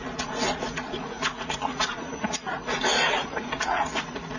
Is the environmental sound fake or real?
fake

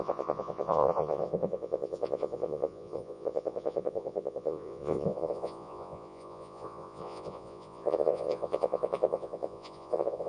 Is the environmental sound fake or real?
fake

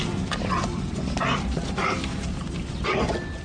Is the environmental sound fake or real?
real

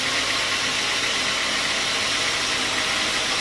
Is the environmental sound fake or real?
real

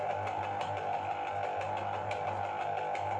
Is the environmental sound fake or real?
real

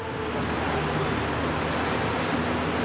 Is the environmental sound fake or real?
real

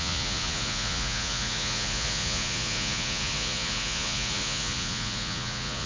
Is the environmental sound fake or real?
fake